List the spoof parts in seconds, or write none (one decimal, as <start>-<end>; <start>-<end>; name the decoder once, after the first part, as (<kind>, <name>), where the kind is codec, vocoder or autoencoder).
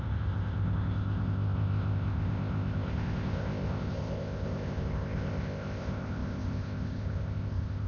0.0-7.9 (codec, ZipCodec)